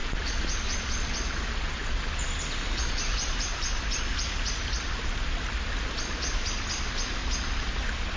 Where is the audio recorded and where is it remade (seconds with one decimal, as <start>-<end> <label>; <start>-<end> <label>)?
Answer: 0.0-8.2 recorded